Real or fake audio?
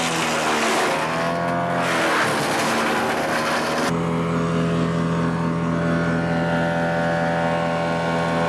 real